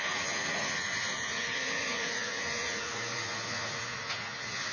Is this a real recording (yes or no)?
no